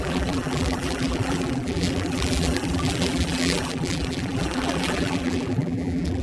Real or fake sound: fake